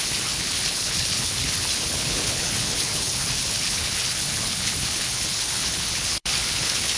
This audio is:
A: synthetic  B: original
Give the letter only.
A